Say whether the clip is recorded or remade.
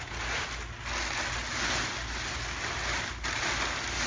recorded